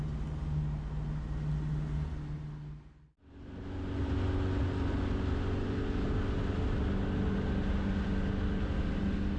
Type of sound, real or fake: real